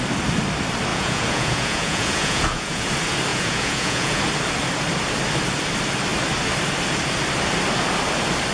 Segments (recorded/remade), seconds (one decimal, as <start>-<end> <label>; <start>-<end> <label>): 0.0-0.9 recorded; 0.9-2.9 remade; 2.9-3.3 recorded; 3.3-4.2 remade; 4.2-8.5 recorded